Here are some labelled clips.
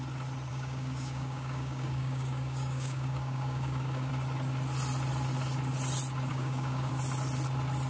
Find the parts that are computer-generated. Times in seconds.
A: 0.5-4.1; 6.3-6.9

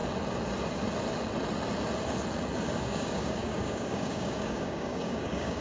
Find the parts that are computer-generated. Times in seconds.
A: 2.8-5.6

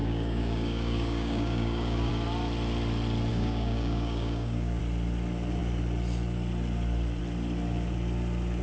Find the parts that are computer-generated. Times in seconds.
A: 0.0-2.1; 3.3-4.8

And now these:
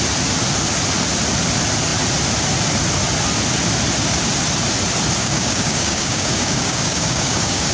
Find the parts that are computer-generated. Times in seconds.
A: 5.2-7.7

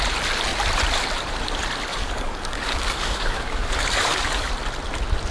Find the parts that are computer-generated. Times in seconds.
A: 1.9-4.5

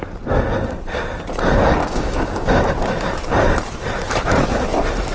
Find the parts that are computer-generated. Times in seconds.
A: 1.8-2.5

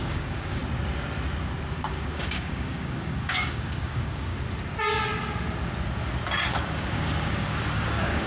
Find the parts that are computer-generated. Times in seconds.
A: 0.0-0.6; 1.7-4.3; 6.5-8.3